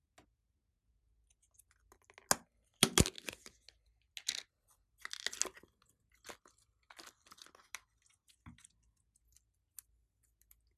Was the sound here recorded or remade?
recorded